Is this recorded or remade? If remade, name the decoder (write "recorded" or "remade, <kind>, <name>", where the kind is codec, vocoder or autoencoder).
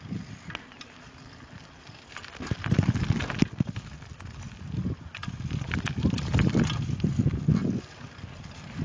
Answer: recorded